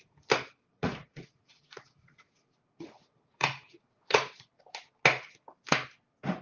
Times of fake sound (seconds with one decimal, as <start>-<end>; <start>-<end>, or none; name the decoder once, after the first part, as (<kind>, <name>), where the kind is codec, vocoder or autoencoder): 0.7-4.5 (vocoder, Vocos)